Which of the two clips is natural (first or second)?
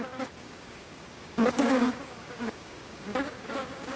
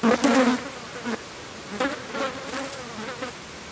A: second